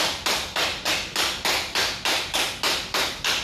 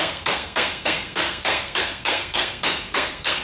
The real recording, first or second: first